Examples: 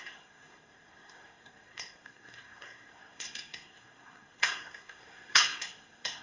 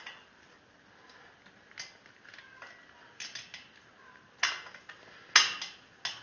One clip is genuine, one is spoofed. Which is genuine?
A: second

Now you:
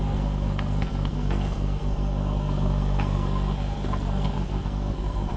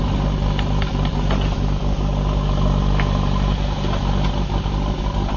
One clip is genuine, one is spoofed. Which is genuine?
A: second